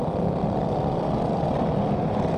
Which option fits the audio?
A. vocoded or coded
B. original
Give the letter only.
B